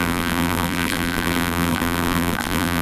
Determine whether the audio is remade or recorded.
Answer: remade